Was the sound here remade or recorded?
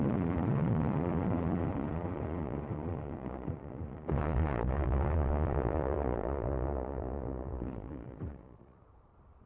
remade